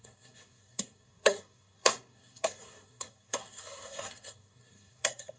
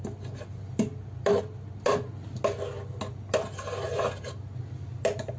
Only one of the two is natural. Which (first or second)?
second